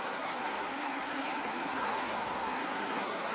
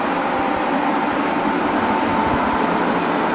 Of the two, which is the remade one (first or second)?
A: first